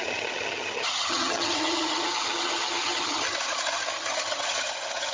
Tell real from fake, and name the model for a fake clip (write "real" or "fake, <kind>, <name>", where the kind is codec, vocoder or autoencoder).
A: fake, vocoder, HiFi-GAN